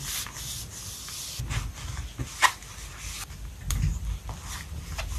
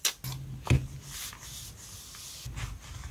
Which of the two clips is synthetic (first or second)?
first